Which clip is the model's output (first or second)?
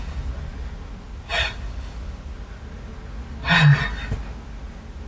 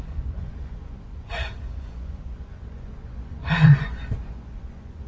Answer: second